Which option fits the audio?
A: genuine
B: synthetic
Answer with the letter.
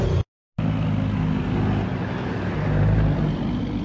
A